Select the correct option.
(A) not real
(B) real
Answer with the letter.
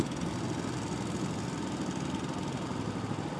B